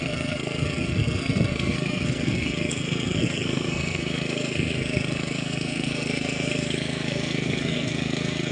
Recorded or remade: remade